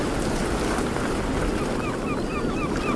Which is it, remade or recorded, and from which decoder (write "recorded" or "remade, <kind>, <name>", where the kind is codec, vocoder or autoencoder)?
recorded